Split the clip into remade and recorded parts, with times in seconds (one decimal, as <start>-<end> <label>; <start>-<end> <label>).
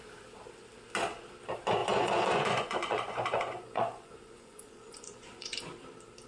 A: 0.0-1.8 recorded; 1.8-5.6 remade; 5.6-6.3 recorded